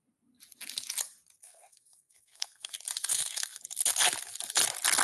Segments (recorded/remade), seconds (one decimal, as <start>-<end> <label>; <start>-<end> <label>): 0.0-1.4 recorded; 1.4-2.7 remade; 2.7-3.1 recorded; 3.1-3.6 remade; 3.6-5.0 recorded